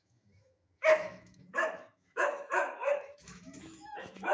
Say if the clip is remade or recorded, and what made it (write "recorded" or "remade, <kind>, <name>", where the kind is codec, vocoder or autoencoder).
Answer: remade, autoencoder, DAC-VAE